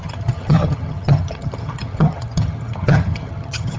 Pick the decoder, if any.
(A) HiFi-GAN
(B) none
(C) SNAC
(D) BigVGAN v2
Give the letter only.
A